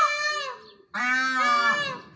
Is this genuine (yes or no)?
yes